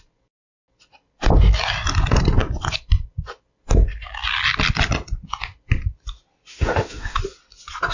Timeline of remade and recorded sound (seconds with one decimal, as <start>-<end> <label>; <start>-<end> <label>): 0.0-6.5 recorded; 6.5-7.2 remade; 7.2-7.9 recorded